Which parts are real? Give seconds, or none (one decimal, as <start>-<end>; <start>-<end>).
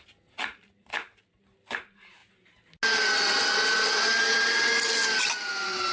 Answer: 0.0-5.9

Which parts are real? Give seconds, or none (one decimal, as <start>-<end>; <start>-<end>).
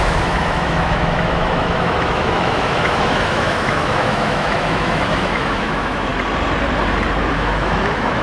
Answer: 6.1-7.3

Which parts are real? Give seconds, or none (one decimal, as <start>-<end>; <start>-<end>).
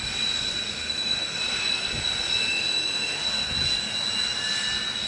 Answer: 0.0-0.7; 1.4-2.5; 3.5-5.1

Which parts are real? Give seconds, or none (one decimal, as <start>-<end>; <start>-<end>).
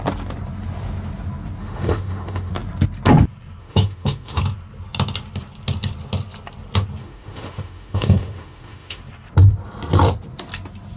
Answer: 0.0-1.6; 2.5-3.6; 4.4-7.0; 9.0-11.0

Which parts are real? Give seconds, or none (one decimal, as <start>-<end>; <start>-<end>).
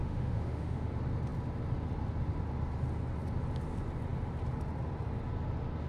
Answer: 0.9-5.9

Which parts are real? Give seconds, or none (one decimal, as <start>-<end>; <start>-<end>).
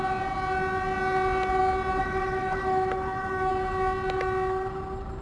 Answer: 0.0-2.0; 3.5-5.2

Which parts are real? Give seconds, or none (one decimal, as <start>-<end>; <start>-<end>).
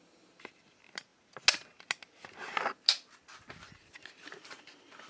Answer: 0.0-5.1